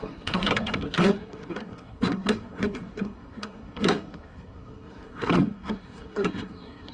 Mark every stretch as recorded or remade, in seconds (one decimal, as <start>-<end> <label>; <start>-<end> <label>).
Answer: 0.0-6.9 remade